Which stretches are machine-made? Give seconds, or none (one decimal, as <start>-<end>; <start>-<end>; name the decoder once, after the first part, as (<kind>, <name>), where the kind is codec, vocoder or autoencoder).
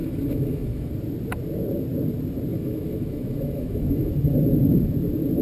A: 0.0-0.9 (autoencoder, DAC-VAE); 2.5-4.1